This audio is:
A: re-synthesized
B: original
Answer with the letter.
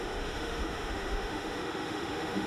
A